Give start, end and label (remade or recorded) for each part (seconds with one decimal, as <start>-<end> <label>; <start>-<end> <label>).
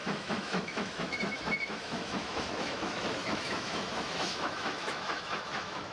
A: 0.0-5.9 remade